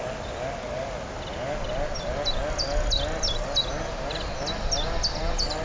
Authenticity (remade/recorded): recorded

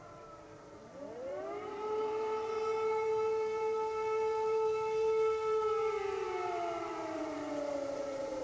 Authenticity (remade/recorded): remade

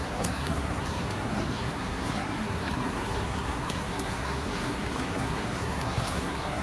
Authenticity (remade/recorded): remade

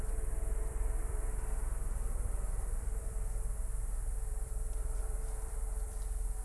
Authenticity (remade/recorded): remade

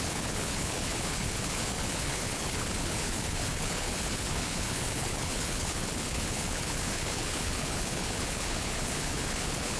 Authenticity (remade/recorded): remade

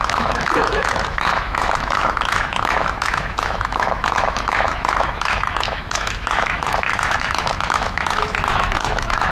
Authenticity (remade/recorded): remade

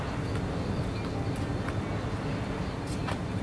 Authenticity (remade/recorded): recorded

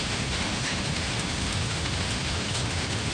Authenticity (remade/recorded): remade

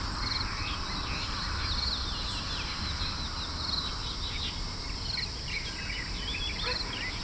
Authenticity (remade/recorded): recorded